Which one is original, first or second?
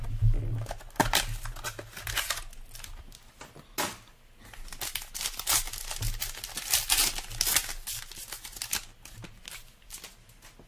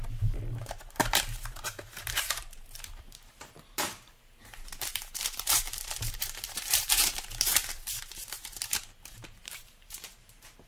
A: first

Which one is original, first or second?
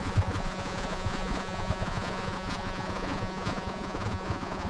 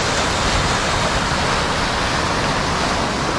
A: second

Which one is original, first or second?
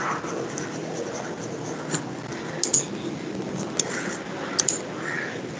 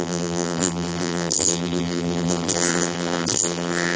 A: first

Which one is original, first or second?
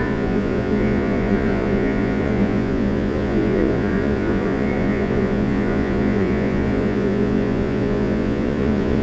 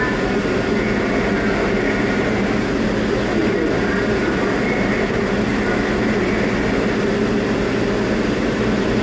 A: second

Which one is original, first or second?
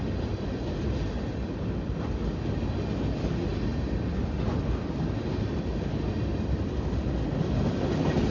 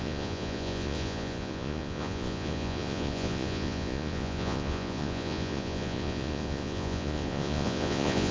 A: first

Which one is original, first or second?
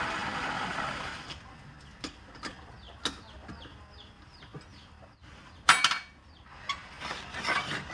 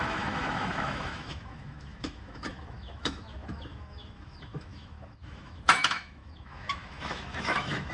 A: first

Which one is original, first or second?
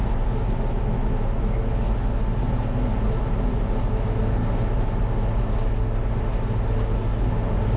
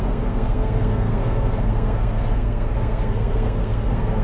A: first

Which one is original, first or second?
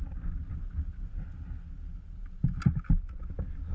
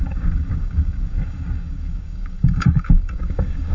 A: first